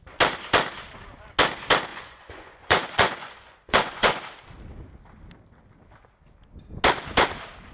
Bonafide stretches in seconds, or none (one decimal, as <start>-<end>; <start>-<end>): 0.0-1.9; 4.2-7.7